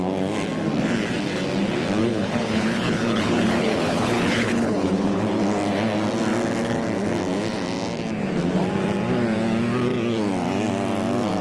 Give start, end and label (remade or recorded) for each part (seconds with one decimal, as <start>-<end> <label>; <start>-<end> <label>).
0.0-2.0 recorded; 2.0-5.2 remade; 5.2-11.4 recorded